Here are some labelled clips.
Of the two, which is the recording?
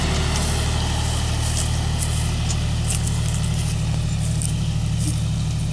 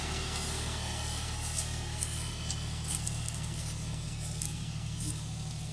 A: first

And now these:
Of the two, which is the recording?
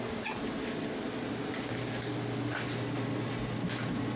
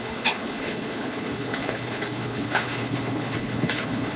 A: first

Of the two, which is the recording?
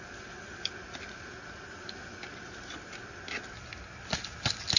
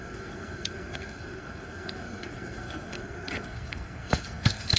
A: first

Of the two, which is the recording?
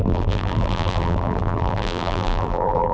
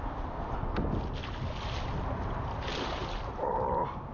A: second